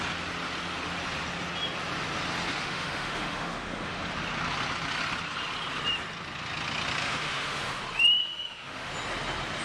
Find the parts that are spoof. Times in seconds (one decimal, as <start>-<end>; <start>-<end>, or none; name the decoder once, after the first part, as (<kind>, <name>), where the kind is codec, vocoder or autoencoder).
2.6-4.0 (autoencoder, DAC-VAE); 7.0-7.8; 8.2-8.9